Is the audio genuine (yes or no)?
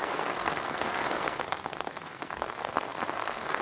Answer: no